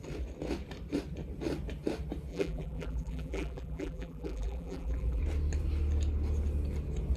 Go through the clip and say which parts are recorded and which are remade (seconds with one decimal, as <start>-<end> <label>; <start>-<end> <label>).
0.0-2.3 recorded; 2.3-5.2 remade; 5.2-7.2 recorded